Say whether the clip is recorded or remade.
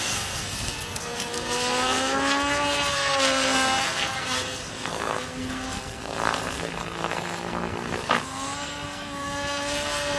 remade